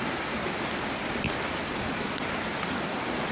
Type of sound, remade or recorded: recorded